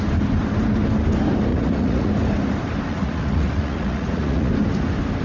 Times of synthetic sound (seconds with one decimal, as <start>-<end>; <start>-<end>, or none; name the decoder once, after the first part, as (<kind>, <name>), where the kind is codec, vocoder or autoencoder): 1.5-2.1 (vocoder, Vocos); 2.9-4.5